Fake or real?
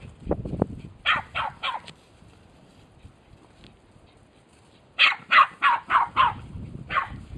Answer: real